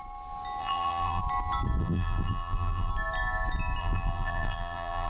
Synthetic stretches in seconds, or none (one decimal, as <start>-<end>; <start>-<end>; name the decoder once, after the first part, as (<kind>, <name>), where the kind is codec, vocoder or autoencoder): 0.6-1.2 (vocoder, BigVGAN v2); 1.8-2.9; 3.8-5.1